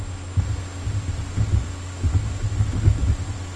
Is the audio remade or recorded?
recorded